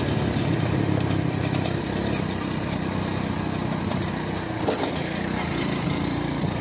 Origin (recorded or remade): recorded